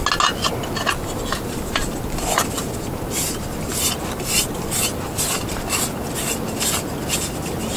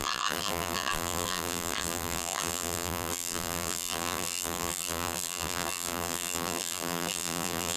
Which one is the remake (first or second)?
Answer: second